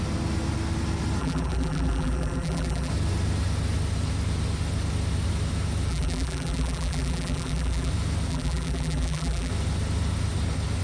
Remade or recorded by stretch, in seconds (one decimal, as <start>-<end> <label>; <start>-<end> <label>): 0.0-1.2 recorded; 1.2-2.9 remade; 2.9-5.9 recorded; 5.9-7.9 remade; 7.9-8.3 recorded; 8.3-9.5 remade; 9.5-10.8 recorded